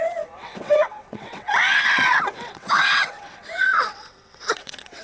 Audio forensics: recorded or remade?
remade